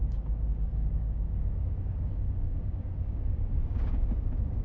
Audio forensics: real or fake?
fake